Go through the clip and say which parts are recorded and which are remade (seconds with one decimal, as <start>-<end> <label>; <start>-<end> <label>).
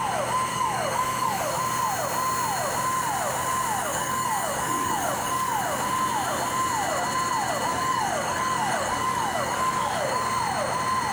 0.0-0.5 recorded; 0.5-1.6 remade; 1.6-3.8 recorded; 3.8-5.6 remade; 5.6-7.7 recorded; 7.7-10.3 remade; 10.3-11.1 recorded